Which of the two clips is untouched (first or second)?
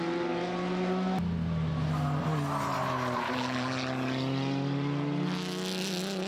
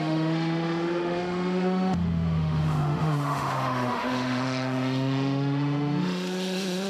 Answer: first